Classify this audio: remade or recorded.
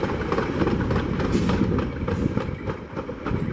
recorded